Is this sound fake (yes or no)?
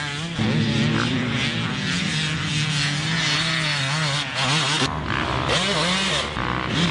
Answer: no